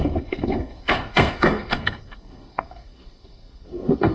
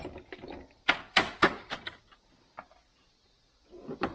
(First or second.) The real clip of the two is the second